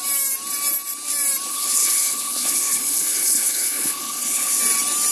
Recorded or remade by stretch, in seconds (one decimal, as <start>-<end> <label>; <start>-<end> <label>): 0.0-1.5 recorded; 1.5-4.6 remade; 4.6-5.1 recorded